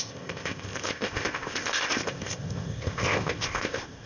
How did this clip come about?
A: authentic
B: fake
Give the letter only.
B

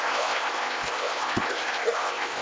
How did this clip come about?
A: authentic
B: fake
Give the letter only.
B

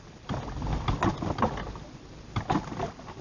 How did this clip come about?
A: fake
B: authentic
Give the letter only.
B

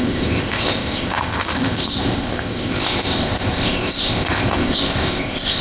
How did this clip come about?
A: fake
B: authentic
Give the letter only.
A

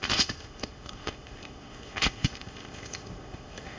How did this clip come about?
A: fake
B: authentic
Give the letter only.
A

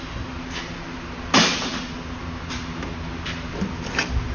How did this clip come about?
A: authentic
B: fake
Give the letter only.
A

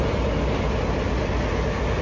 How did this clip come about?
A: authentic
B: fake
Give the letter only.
A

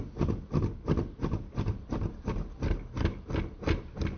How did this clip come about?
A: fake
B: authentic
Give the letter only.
B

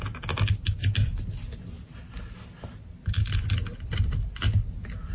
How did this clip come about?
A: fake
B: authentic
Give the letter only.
B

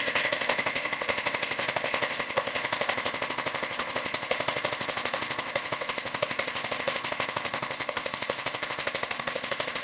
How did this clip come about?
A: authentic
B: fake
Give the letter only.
B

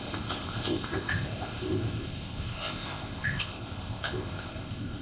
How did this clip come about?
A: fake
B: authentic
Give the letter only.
A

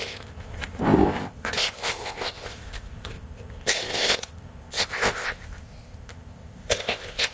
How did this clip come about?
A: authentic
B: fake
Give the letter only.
B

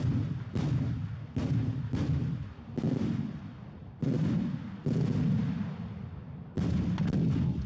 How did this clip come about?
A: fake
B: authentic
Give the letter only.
B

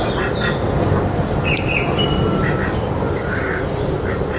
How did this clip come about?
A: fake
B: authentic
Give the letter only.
B